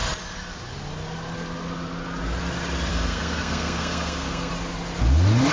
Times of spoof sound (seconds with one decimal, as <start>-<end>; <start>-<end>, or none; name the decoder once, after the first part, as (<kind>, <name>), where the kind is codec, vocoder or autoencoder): 2.9-4.5 (codec, SNAC)